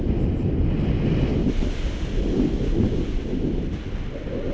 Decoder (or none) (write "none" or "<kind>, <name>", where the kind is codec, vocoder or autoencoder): none